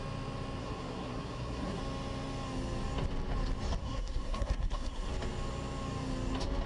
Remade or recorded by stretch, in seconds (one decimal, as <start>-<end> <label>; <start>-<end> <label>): 0.0-0.6 recorded; 0.6-1.8 remade; 1.8-3.8 recorded; 3.8-5.1 remade; 5.1-6.7 recorded

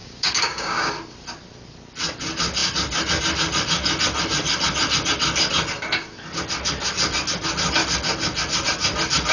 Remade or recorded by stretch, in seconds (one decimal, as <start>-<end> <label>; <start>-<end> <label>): 0.0-0.9 remade; 0.9-9.3 recorded